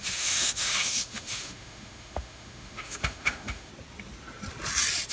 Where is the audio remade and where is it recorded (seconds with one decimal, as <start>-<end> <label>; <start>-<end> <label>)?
0.0-3.7 remade; 3.7-5.1 recorded